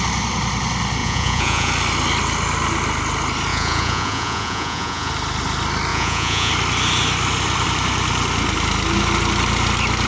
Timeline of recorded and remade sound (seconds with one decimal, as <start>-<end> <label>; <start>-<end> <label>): 0.0-1.0 recorded; 1.0-1.7 remade; 1.7-3.5 recorded; 3.5-5.1 remade; 5.1-5.9 recorded; 5.9-6.5 remade; 6.5-10.1 recorded